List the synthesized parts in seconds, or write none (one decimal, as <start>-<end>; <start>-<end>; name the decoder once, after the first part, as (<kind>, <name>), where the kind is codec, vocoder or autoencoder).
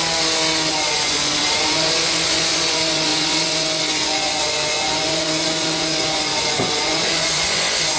0.7-8.0 (vocoder, Vocos)